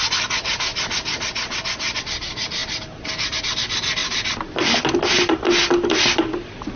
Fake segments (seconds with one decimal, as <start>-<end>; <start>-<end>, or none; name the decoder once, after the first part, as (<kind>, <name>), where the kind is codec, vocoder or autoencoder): none